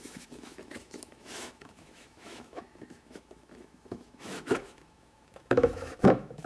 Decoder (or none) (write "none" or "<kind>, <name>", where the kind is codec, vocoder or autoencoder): autoencoder, DAC-VAE